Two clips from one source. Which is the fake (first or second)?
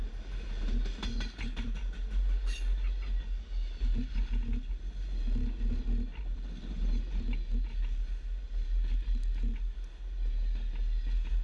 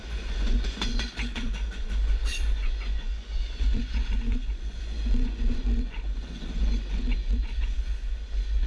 second